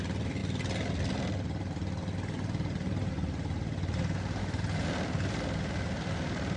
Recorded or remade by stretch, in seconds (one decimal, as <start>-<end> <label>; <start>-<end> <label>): 0.0-6.6 recorded